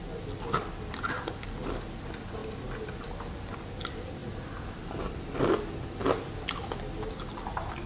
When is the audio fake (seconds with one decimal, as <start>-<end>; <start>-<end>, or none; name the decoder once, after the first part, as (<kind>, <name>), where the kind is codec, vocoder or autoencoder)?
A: none